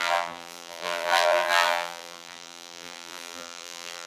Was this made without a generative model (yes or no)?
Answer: no